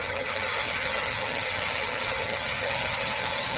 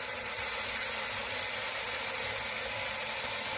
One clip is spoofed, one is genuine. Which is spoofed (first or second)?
first